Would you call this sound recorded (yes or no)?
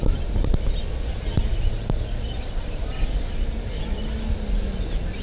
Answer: yes